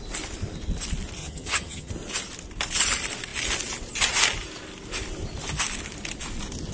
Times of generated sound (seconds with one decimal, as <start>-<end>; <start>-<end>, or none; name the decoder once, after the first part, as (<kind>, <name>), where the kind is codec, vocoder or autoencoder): 1.2-1.9 (vocoder, HiFi-GAN)